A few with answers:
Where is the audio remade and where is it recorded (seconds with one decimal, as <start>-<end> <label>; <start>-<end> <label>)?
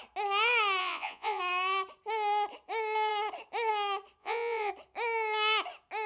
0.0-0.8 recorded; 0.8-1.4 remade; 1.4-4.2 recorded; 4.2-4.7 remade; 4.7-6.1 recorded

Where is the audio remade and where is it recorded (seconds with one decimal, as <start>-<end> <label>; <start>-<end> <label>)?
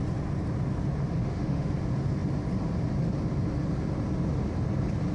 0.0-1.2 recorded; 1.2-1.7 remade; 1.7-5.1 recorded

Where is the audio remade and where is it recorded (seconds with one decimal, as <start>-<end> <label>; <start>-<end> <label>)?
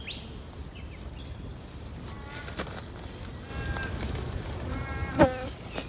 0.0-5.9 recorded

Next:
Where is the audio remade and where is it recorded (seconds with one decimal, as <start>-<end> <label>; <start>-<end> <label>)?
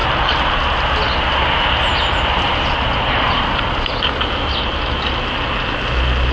0.0-6.3 recorded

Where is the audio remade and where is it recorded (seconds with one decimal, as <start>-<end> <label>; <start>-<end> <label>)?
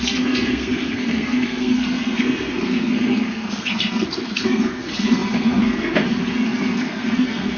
0.0-7.6 remade